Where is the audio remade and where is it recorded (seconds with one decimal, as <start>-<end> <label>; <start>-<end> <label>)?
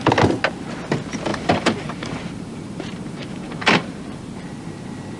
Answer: 0.0-1.3 recorded; 1.3-4.4 remade; 4.4-5.2 recorded